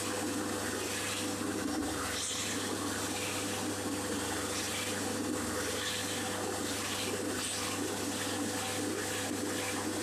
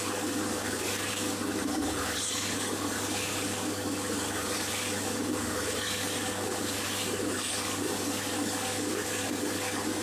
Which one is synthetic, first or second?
second